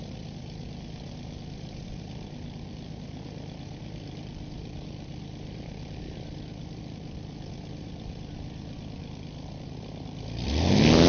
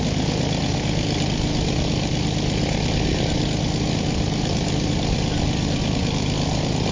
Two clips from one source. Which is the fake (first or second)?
first